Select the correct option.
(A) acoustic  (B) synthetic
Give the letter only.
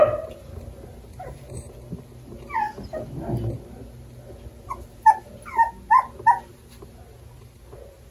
A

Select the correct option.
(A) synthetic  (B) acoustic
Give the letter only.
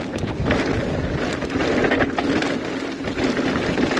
B